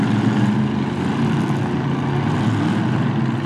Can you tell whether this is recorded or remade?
recorded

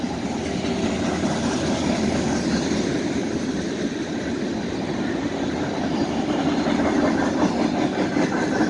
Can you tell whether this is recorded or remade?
recorded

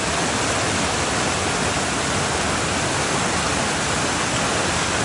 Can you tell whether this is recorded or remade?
recorded